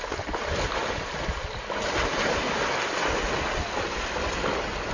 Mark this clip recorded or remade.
recorded